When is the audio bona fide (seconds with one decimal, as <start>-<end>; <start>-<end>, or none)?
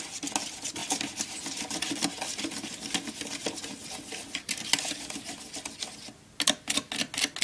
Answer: 0.0-7.4